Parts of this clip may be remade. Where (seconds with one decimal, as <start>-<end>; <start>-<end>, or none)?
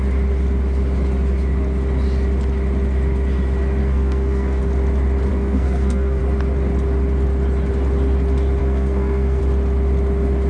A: 3.8-4.6; 5.3-6.2; 8.6-9.4